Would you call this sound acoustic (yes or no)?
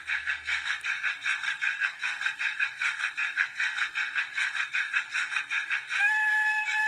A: no